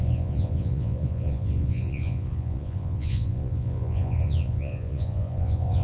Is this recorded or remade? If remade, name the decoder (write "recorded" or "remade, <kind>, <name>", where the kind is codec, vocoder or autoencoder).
remade, vocoder, Vocos